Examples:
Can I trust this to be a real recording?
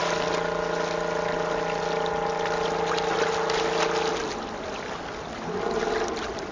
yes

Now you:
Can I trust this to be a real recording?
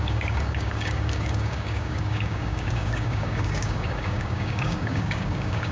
no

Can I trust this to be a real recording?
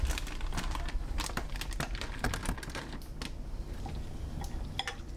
yes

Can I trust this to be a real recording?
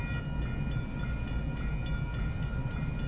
yes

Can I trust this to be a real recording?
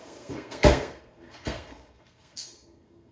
no